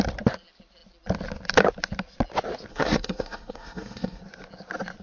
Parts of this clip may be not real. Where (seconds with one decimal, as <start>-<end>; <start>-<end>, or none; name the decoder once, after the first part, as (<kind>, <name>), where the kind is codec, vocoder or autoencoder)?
2.7-4.2 (codec, SNAC)